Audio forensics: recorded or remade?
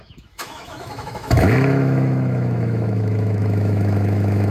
remade